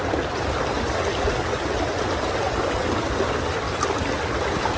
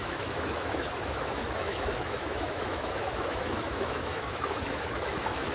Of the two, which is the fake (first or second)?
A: second